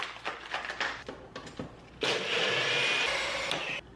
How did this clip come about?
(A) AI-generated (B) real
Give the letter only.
B